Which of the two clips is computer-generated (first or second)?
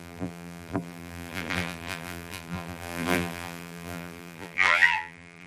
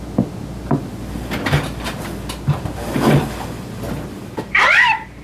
first